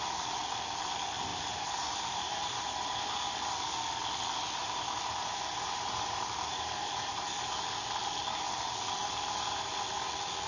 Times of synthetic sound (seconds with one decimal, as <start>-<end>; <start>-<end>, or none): 1.3-3.3; 4.6-7.5; 9.0-9.7